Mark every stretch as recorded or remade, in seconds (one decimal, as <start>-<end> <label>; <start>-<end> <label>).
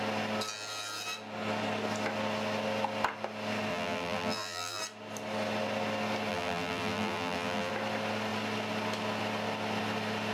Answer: 0.0-3.7 recorded; 3.7-4.8 remade; 4.8-6.3 recorded; 6.3-7.7 remade; 7.7-10.3 recorded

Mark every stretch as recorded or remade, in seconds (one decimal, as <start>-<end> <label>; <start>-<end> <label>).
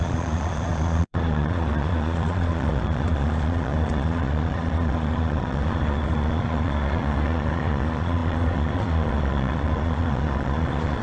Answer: 0.0-11.0 remade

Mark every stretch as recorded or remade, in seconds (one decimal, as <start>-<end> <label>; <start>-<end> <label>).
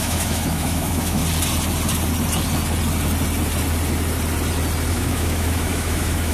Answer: 0.0-1.2 remade; 1.2-4.9 recorded; 4.9-6.3 remade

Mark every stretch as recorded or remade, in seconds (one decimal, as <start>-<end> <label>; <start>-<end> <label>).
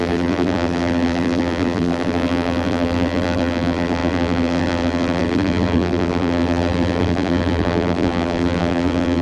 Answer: 0.0-9.2 remade